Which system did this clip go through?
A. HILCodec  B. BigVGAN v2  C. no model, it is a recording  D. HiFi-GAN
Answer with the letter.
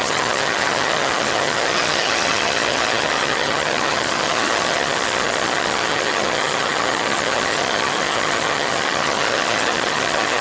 D